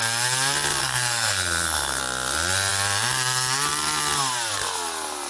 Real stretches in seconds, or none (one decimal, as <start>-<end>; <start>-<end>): 0.0-0.8; 2.0-5.3